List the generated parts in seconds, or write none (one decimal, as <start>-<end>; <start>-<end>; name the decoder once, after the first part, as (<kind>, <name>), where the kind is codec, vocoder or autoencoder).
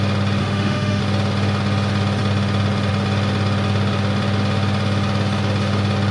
0.4-1.0 (autoencoder, DAC-VAE)